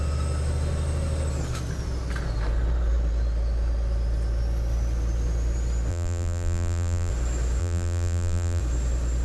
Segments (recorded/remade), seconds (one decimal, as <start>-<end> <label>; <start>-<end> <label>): 0.0-5.9 recorded; 5.9-7.1 remade; 7.1-7.6 recorded; 7.6-8.6 remade; 8.6-9.2 recorded